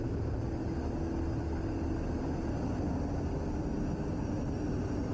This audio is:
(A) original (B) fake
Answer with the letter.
A